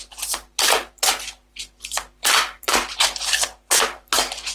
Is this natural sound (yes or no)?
no